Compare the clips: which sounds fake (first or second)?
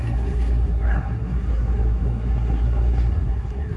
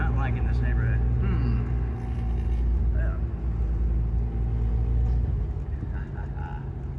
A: first